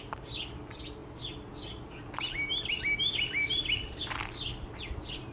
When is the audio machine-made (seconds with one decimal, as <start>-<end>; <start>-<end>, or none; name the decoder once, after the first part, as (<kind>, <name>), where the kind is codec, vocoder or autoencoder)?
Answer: none